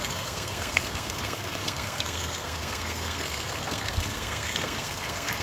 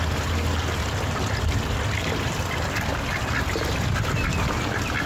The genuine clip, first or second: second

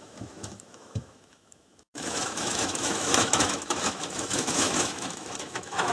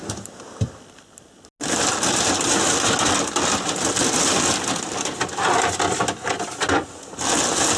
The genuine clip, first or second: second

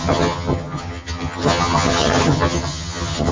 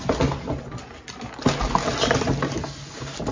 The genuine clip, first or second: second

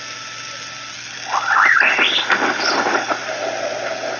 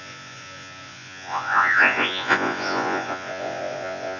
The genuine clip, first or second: first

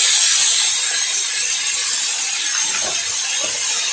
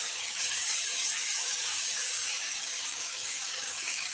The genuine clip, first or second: first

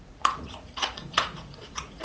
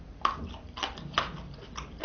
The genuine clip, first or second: second